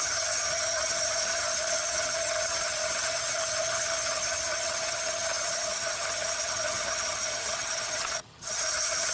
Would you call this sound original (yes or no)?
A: no